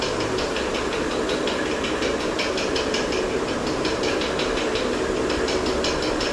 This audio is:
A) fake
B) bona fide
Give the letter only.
B